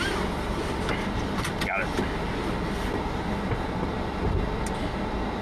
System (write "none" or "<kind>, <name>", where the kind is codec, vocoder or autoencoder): none